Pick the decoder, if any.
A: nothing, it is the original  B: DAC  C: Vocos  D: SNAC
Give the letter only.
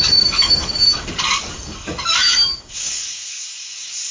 B